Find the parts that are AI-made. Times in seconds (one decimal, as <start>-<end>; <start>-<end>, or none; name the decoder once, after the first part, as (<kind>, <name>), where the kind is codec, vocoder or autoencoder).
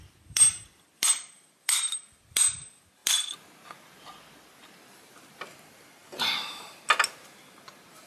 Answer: 0.0-6.0 (vocoder, BigVGAN v2)